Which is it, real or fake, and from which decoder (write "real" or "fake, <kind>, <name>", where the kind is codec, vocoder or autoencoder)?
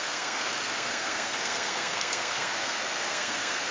fake, codec, SNAC